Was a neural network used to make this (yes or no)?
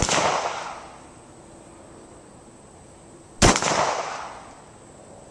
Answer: no